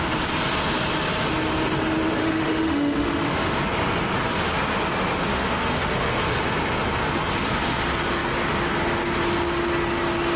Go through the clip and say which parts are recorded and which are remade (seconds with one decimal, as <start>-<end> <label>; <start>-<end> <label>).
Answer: 0.0-2.2 recorded; 2.2-3.4 remade; 3.4-5.3 recorded; 5.3-6.1 remade; 6.1-10.4 recorded